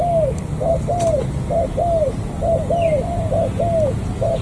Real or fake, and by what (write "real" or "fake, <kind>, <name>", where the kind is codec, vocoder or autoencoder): real